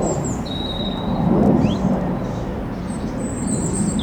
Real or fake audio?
fake